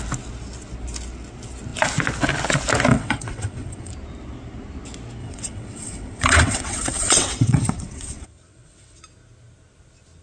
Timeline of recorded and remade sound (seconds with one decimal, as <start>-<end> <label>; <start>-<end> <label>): 0.0-2.9 recorded; 2.9-3.9 remade; 3.9-5.2 recorded; 5.2-9.0 remade; 9.0-10.2 recorded